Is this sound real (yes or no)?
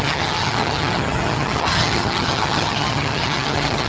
no